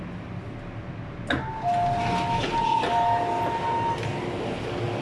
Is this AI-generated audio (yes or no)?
no